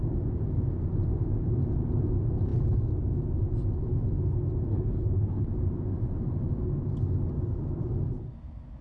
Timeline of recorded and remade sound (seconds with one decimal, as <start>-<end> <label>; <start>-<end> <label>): 0.0-4.7 recorded; 4.7-5.5 remade; 5.5-8.8 recorded